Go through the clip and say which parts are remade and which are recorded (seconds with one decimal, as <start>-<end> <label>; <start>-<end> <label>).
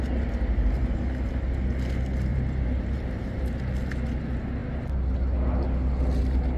0.0-2.3 recorded; 2.3-3.6 remade; 3.6-6.6 recorded